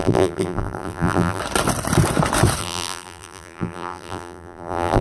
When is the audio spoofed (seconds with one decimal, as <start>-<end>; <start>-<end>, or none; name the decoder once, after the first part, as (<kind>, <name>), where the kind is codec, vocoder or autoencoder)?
0.0-1.4 (vocoder, BigVGAN v2); 2.6-5.0